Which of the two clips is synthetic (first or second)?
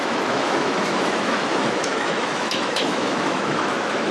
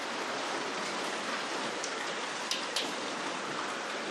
first